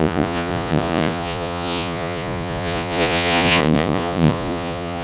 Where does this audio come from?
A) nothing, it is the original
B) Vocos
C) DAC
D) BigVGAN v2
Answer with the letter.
B